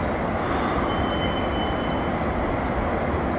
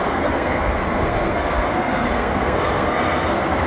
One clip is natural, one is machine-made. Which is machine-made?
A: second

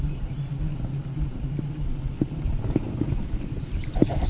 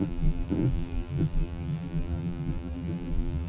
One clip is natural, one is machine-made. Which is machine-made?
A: second